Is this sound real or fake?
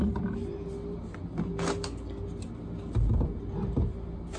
real